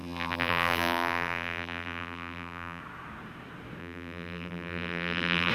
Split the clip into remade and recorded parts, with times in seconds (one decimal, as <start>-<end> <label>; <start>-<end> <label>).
0.0-2.8 remade; 2.8-3.8 recorded; 3.8-5.5 remade